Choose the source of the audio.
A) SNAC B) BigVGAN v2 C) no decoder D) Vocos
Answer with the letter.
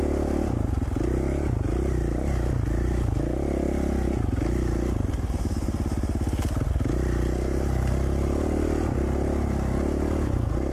C